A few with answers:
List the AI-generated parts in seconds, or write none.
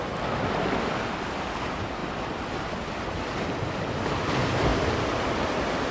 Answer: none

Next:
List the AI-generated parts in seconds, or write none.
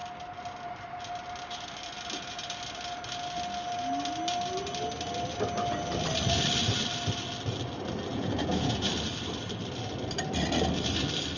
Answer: 8.1-8.9 (vocoder, Vocos)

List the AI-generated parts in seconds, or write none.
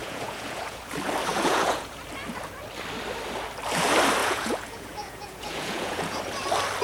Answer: 0.0-0.8 (vocoder, Vocos); 1.3-2.0; 4.2-6.2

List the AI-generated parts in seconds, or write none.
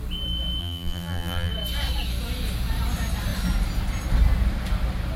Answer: 0.6-1.5 (vocoder, BigVGAN v2)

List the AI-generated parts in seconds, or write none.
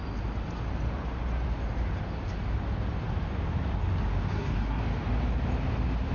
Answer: 4.3-4.8 (codec, SNAC)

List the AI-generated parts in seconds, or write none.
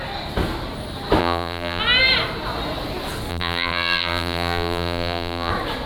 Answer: 1.2-1.8 (vocoder, BigVGAN v2); 3.3-5.5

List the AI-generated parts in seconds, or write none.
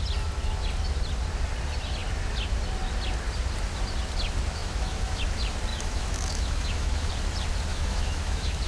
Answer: 4.6-5.2 (autoencoder, DAC-VAE); 5.7-7.1; 7.7-8.7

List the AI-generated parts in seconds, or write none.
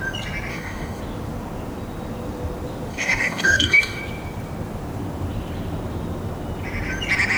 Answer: 0.5-1.0 (codec, DAC); 2.9-4.0